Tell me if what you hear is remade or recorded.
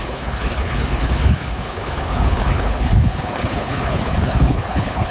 remade